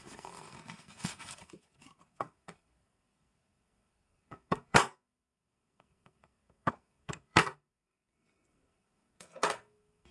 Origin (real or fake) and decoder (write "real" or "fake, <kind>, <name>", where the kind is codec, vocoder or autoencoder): fake, codec, SNAC